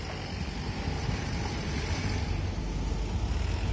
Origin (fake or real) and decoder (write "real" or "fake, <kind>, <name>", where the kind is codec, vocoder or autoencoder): real